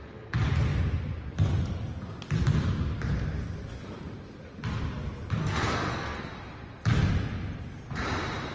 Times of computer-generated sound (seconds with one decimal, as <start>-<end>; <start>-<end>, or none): 5.4-6.3